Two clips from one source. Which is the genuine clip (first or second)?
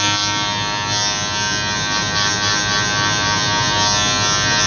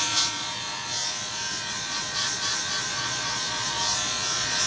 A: first